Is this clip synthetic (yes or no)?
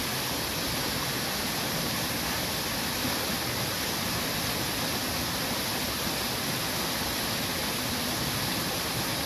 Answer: no